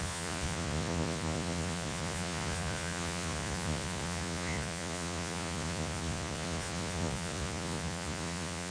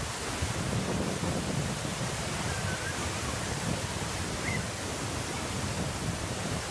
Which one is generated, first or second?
first